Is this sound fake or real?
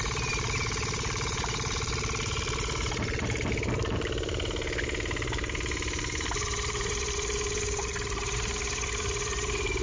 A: fake